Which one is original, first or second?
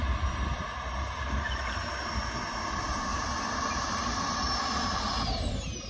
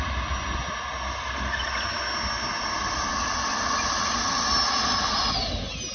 second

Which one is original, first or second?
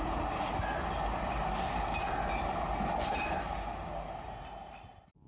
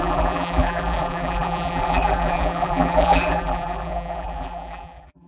first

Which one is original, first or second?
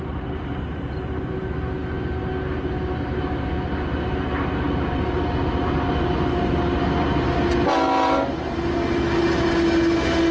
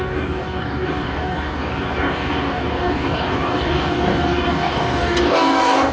first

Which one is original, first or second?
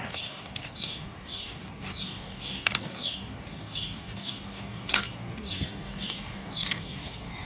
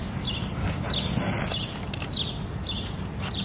second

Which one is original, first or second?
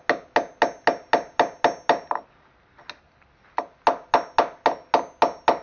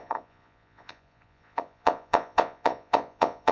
first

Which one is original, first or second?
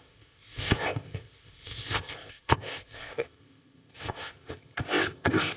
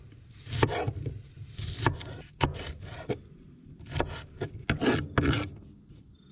second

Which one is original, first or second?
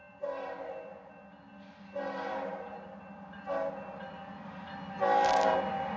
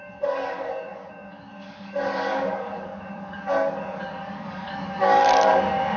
first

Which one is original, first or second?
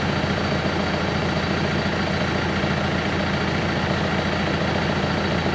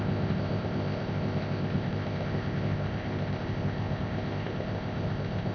first